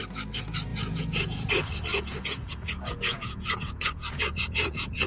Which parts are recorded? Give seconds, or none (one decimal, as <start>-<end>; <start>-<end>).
0.0-0.7; 1.5-1.9